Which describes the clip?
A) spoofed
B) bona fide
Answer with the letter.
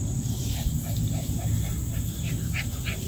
B